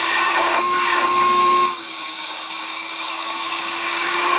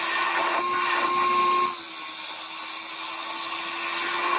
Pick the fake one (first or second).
first